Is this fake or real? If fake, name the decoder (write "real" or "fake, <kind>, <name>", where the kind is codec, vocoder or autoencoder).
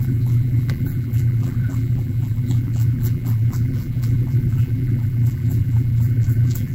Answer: fake, vocoder, BigVGAN v2